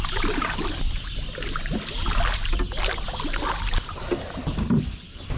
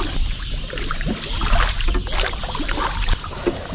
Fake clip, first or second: second